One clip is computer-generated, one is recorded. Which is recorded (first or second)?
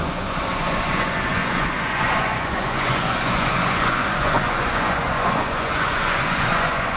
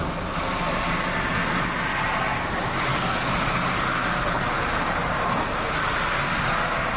second